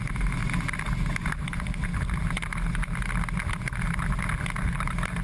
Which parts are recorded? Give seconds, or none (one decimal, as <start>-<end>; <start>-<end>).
0.4-1.2; 1.9-5.2